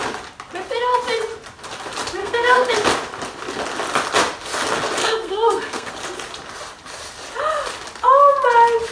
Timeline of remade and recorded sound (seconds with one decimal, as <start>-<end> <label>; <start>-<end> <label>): 0.0-2.2 recorded; 2.2-2.7 remade; 2.7-5.0 recorded; 5.0-5.9 remade; 5.9-8.9 recorded